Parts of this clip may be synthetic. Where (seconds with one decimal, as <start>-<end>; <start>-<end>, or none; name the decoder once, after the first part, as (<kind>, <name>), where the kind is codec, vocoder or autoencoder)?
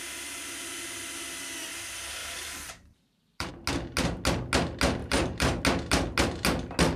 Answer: 2.2-3.5 (vocoder, BigVGAN v2); 5.0-5.6